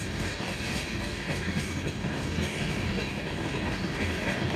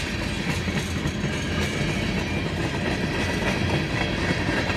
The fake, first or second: first